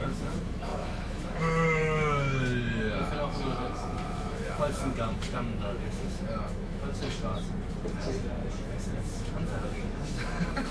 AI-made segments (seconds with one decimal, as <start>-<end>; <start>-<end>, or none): 0.0-7.3; 8.5-10.7